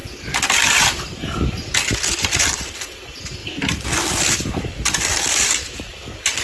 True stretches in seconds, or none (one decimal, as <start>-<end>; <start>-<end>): 2.7-3.4; 4.3-5.1; 5.9-6.4